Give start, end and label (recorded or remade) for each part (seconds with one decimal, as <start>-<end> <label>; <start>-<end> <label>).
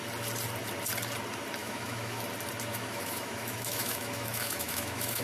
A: 0.0-1.6 recorded; 1.6-2.2 remade; 2.2-2.7 recorded; 2.7-5.2 remade